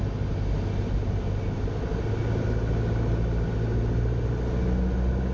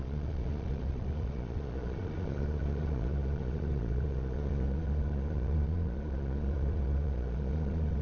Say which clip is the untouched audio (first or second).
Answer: first